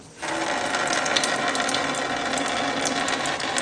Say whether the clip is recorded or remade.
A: recorded